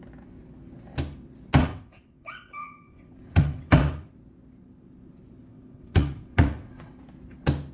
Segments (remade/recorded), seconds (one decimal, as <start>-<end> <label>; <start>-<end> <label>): 0.0-1.6 recorded; 1.6-4.1 remade; 4.1-5.5 recorded; 5.5-7.0 remade; 7.0-7.7 recorded